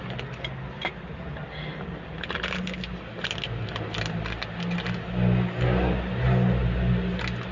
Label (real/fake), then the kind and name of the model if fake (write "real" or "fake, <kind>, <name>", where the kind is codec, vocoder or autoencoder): real